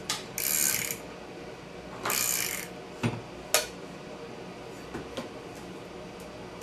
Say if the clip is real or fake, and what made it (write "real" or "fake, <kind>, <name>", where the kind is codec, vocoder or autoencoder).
real